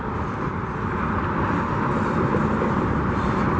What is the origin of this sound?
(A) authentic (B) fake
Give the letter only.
A